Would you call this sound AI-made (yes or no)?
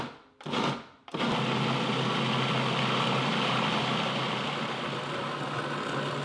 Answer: no